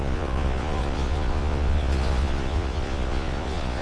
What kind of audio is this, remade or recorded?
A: remade